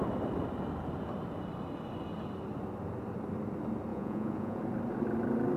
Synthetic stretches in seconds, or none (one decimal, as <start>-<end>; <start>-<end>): 3.9-4.6